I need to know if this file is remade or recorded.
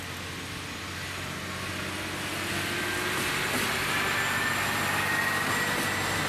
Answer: recorded